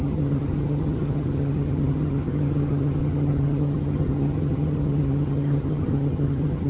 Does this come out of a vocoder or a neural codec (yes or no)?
yes